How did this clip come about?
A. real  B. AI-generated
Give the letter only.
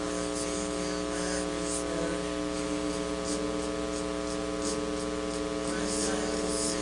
A